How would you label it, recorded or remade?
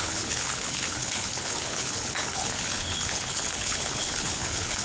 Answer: remade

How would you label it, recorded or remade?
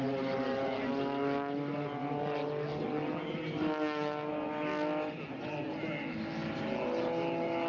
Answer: recorded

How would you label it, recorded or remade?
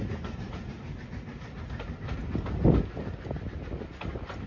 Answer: recorded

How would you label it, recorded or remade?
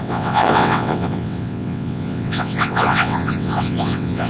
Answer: remade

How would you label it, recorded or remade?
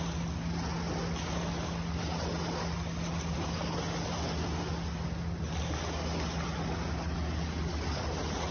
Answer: recorded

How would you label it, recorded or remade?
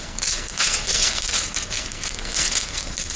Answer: remade